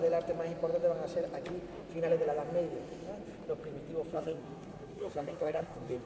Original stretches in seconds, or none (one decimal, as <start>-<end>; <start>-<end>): 0.0-4.1